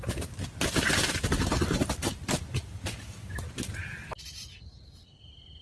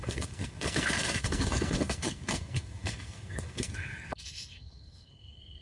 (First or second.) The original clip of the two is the first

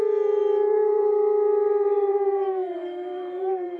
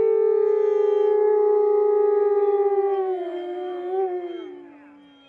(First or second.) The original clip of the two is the second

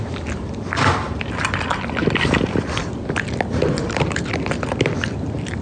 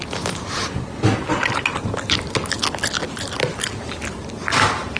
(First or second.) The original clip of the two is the second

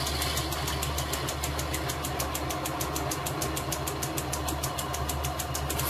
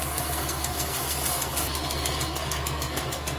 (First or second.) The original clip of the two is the first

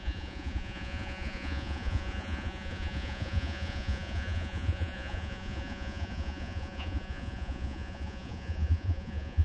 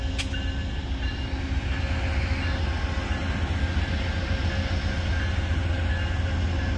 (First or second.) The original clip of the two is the second